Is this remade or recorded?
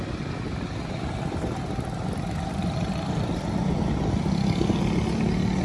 recorded